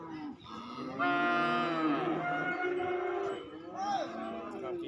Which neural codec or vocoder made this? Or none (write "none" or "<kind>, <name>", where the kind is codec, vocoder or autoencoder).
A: none